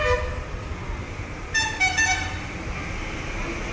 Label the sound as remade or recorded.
recorded